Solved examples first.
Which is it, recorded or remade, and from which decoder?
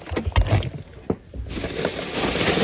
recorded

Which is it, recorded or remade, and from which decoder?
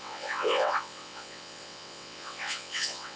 remade, vocoder, WaveNeXt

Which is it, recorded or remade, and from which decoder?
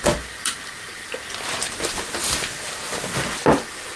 recorded